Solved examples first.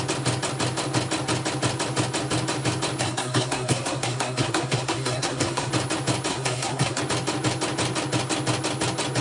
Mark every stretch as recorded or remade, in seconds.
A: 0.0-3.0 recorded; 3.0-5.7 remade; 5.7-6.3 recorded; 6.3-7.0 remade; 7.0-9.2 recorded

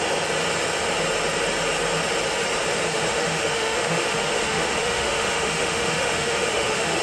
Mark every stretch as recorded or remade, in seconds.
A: 0.0-2.9 recorded; 2.9-7.0 remade

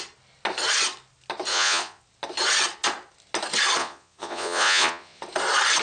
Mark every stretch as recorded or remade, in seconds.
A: 0.0-1.5 recorded; 1.5-2.0 remade; 2.0-3.8 recorded; 3.8-5.2 remade; 5.2-5.8 recorded

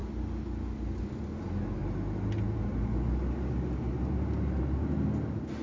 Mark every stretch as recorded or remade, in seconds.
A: 0.0-5.6 recorded

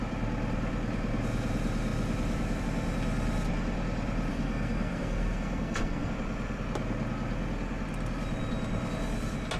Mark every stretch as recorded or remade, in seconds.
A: 0.0-4.3 recorded; 4.3-6.1 remade; 6.1-9.6 recorded